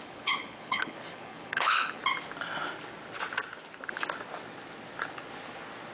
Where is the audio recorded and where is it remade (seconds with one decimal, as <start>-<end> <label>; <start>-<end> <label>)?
0.0-2.0 remade; 2.0-5.9 recorded